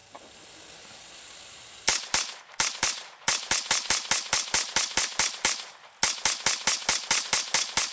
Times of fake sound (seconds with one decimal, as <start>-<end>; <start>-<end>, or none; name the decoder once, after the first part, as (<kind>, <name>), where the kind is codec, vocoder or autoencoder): none